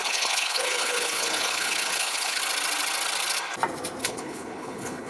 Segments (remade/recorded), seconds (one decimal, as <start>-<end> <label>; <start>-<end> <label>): 0.0-2.4 remade; 2.4-4.0 recorded; 4.0-5.1 remade